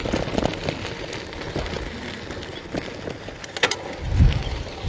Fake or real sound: real